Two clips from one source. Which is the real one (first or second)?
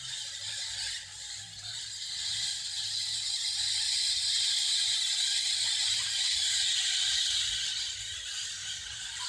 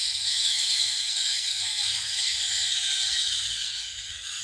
first